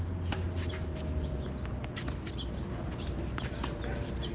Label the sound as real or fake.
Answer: real